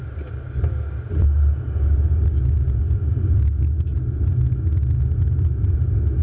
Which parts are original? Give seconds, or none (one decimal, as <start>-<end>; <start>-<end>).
0.0-6.2